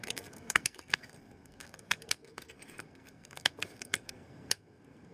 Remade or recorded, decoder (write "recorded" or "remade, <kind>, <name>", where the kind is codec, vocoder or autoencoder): remade, codec, SNAC